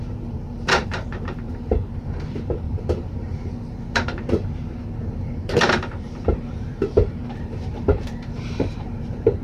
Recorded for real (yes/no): no